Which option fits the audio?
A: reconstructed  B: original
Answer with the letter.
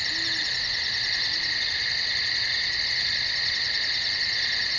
B